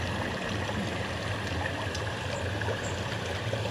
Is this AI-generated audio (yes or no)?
no